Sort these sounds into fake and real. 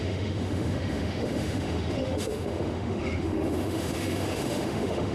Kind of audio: fake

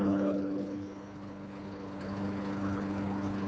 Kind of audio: fake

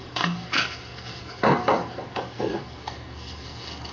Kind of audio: fake